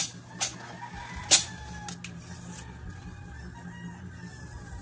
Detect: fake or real real